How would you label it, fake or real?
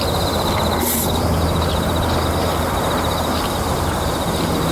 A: real